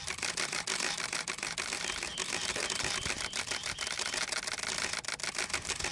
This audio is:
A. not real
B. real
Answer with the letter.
B